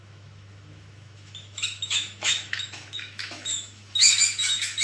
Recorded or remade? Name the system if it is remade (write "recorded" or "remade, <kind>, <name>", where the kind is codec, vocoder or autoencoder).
remade, autoencoder, DAC-VAE